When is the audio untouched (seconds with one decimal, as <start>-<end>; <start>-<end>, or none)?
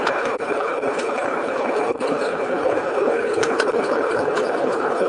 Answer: none